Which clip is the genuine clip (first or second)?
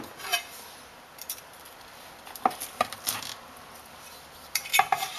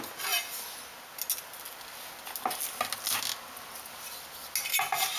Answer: second